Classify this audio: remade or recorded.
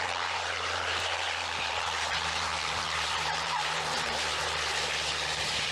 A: remade